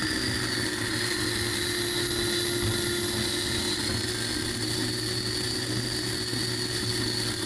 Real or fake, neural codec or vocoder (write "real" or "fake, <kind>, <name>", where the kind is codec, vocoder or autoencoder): real